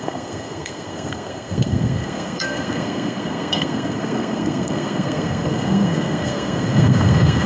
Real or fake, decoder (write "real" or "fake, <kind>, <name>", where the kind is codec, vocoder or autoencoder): fake, codec, SNAC